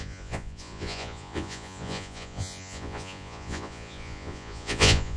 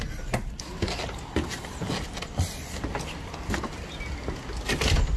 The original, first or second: second